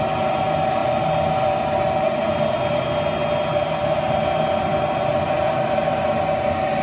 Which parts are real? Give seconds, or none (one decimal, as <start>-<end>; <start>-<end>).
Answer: 0.0-6.8